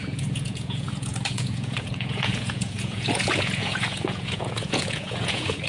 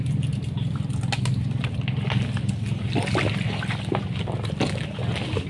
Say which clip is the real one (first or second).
second